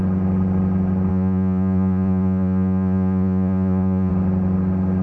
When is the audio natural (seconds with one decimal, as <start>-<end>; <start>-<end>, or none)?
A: 0.0-1.1; 4.1-5.0